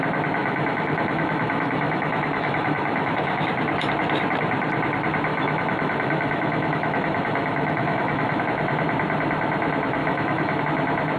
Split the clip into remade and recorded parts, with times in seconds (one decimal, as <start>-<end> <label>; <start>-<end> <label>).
0.0-0.4 recorded; 0.4-3.4 remade; 3.4-5.3 recorded; 5.3-8.4 remade; 8.4-10.0 recorded; 10.0-10.6 remade; 10.6-11.2 recorded